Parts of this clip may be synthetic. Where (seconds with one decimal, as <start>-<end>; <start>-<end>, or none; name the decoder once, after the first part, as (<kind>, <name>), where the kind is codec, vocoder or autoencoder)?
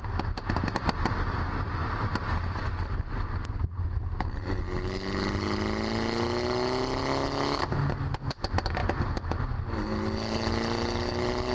none